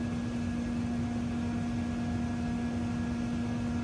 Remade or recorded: recorded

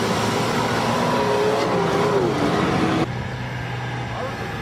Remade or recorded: recorded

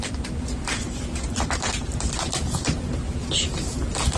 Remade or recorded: remade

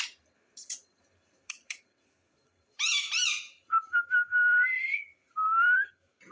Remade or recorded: remade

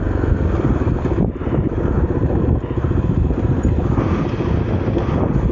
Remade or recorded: recorded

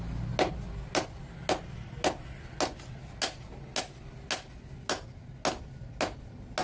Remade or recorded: recorded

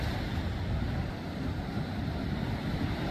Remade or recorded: recorded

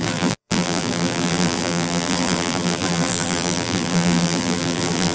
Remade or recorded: remade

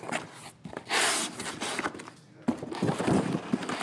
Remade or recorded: recorded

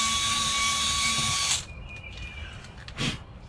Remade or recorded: recorded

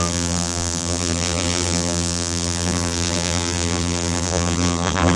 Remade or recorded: remade